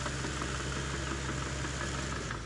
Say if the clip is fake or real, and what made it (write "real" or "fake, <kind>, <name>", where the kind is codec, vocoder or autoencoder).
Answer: real